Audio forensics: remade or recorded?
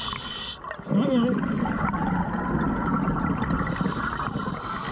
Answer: recorded